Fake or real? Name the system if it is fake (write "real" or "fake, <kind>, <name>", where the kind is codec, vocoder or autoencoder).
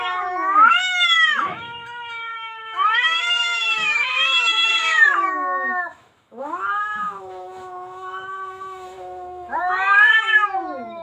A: fake, autoencoder, DAC-VAE